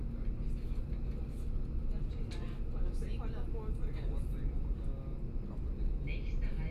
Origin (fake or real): real